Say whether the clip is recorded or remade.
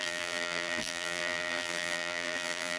remade